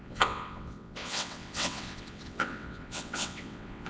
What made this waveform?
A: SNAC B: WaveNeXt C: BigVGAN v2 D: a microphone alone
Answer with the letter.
B